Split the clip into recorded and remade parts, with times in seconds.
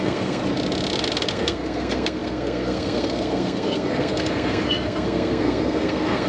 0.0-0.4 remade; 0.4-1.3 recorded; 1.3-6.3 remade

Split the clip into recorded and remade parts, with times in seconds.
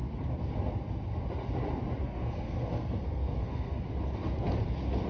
0.0-2.0 recorded; 2.0-3.8 remade; 3.8-5.1 recorded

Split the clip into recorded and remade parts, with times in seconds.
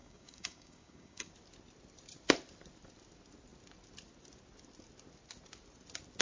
0.0-1.3 remade; 1.3-6.2 recorded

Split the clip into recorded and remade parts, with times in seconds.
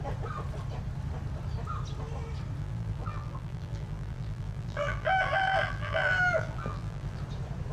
0.0-2.6 recorded; 2.6-7.2 remade; 7.2-7.7 recorded